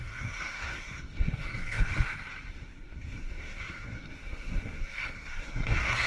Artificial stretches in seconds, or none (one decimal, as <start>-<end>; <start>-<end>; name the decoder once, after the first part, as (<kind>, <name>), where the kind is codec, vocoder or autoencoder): 0.0-1.9 (codec, SNAC); 2.5-6.1